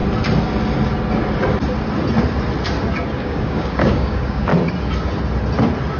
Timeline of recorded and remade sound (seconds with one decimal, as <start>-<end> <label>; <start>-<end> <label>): 0.0-3.2 recorded; 3.2-4.5 remade; 4.5-6.0 recorded